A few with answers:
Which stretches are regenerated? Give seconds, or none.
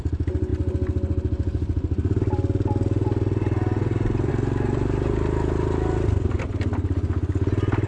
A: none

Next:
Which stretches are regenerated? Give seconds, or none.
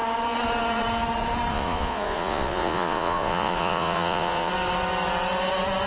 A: 1.5-4.5 (vocoder, Vocos)